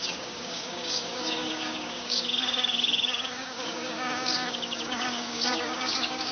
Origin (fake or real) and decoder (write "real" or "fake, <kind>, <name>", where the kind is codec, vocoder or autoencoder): fake, codec, DAC